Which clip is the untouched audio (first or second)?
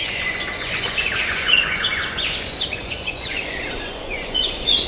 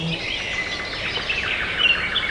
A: second